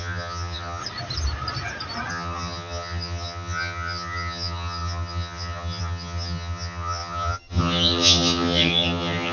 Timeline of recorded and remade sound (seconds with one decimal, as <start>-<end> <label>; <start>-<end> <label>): 0.0-0.8 remade; 0.8-2.1 recorded; 2.1-9.3 remade